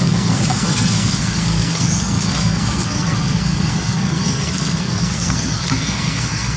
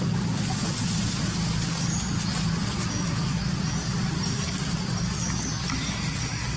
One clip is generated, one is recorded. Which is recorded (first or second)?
second